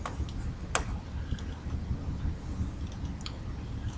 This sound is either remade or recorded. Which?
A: recorded